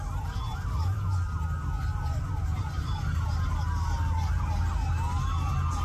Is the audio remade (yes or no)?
no